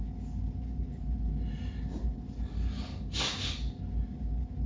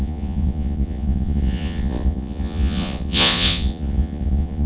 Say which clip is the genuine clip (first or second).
first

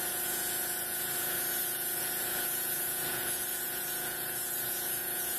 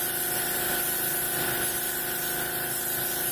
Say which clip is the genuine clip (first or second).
second